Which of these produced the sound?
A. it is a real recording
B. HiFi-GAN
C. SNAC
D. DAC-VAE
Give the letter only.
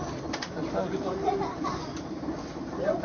A